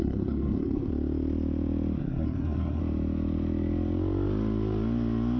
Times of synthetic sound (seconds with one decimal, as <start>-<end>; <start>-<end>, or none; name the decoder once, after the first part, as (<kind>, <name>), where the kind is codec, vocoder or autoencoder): 0.0-0.9 (codec, SNAC); 2.0-2.8